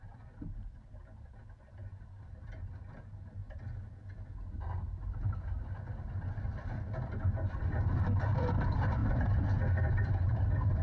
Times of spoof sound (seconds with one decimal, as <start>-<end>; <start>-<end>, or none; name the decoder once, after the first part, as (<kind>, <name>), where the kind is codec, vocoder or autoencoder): 0.0-3.4 (vocoder, BigVGAN v2); 6.3-10.8